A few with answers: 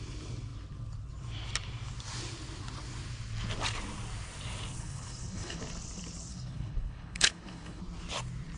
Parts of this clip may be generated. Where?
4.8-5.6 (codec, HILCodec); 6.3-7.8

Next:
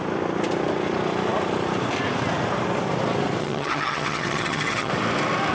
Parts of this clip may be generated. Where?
3.4-4.9 (vocoder, HiFi-GAN)

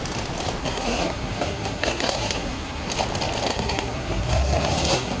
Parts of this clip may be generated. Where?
0.6-2.9 (codec, SNAC); 3.5-5.2

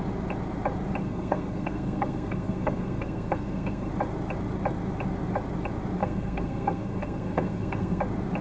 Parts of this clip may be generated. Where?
1.0-3.9 (codec, SNAC); 6.0-8.0

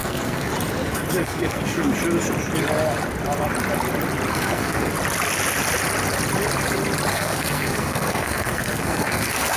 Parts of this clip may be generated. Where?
0.0-0.5 (codec, SNAC); 1.2-1.9; 4.3-4.9; 7.1-9.6

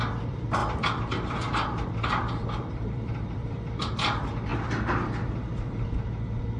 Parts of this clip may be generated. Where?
0.0-4.5 (vocoder, BigVGAN v2)

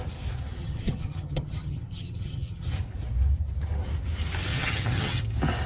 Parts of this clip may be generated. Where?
0.6-2.8 (vocoder, HiFi-GAN); 4.5-5.2